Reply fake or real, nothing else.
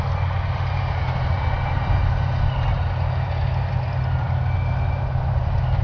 real